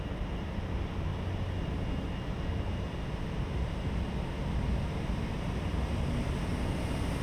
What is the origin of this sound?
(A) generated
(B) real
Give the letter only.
B